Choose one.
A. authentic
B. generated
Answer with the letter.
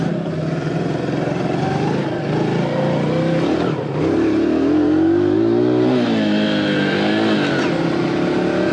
A